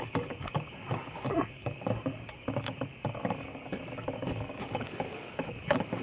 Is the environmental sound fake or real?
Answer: fake